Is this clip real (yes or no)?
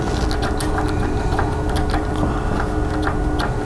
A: yes